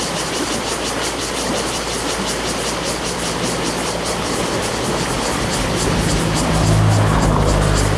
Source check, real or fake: fake